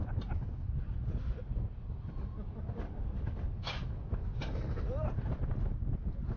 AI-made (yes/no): no